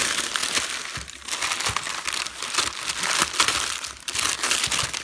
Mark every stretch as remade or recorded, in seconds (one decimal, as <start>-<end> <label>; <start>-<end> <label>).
0.0-5.0 recorded